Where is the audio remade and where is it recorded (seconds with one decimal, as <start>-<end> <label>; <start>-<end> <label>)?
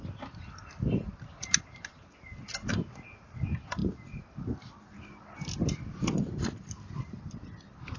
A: 0.0-8.0 recorded